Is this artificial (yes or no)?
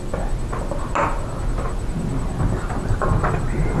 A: no